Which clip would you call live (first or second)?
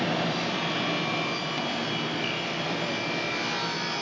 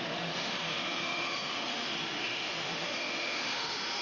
first